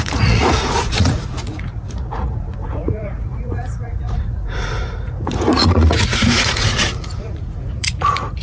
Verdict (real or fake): fake